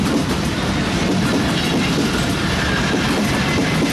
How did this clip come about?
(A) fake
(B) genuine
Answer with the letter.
B